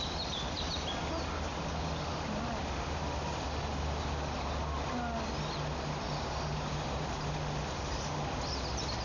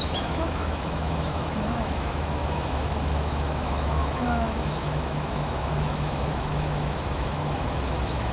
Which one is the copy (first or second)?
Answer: second